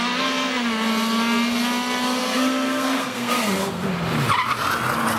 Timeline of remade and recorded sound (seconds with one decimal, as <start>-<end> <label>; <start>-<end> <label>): 0.0-2.2 recorded; 2.2-3.9 remade; 3.9-5.2 recorded